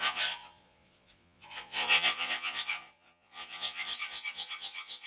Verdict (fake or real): fake